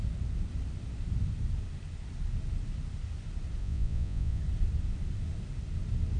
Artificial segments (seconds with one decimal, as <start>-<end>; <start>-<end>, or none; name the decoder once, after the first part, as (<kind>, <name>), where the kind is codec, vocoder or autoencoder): 3.6-4.4 (vocoder, Vocos)